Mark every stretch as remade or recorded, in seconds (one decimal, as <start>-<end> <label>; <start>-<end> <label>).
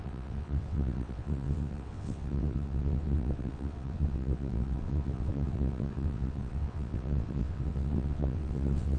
0.0-9.0 remade